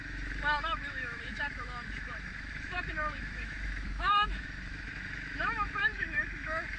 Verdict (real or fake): fake